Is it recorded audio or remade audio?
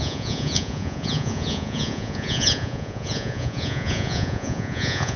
remade